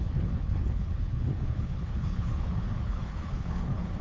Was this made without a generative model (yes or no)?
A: no